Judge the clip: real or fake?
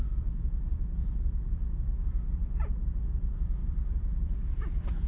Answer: real